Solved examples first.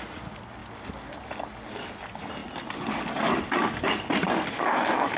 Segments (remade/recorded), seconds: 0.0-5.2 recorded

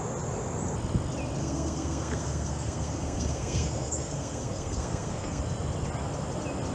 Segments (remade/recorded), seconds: 0.0-1.4 recorded; 1.4-5.4 remade; 5.4-6.7 recorded

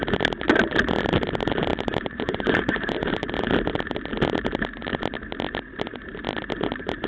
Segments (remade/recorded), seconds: 0.0-1.7 recorded; 1.7-3.3 remade; 3.3-7.1 recorded

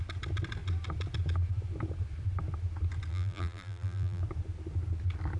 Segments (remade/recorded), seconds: 0.0-3.1 recorded; 3.1-4.2 remade; 4.2-5.4 recorded